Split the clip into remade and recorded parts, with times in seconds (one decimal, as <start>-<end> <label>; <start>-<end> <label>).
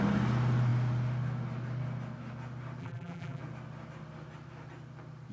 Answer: 0.0-2.8 recorded; 2.8-3.4 remade; 3.4-5.3 recorded